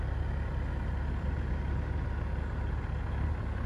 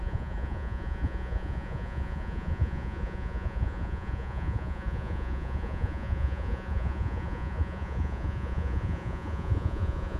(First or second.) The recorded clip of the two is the first